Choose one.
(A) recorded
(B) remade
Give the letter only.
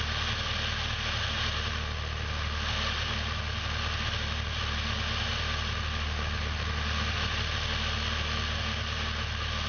A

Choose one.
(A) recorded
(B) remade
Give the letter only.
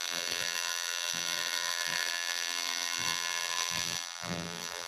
B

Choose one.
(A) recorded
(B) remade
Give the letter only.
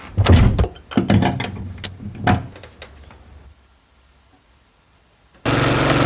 A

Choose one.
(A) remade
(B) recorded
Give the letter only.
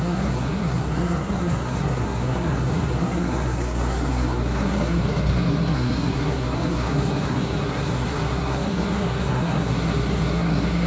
A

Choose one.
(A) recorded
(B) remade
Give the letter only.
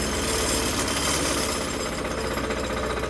A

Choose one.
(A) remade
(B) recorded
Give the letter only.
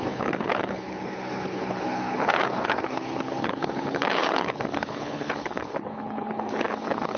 A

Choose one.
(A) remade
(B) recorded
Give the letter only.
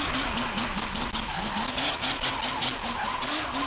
B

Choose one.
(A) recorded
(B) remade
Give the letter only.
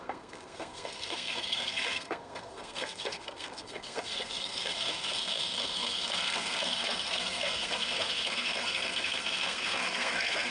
B